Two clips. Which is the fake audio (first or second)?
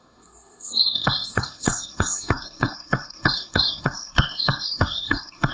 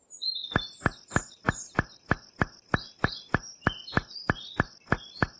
first